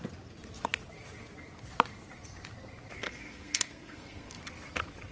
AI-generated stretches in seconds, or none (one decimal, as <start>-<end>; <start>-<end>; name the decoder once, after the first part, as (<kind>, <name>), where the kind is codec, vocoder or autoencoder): 3.0-4.4 (codec, SNAC)